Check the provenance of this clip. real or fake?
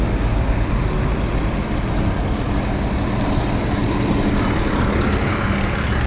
real